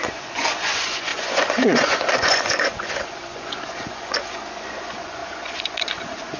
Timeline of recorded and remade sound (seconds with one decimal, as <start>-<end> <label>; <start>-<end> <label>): 0.0-6.4 remade